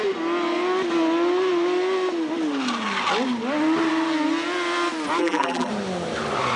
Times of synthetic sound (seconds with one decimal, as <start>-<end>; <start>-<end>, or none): 5.2-5.7